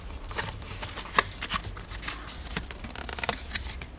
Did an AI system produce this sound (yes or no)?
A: no